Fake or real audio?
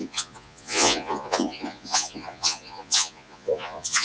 fake